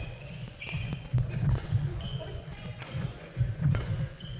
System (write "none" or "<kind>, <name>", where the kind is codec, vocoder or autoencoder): vocoder, Vocos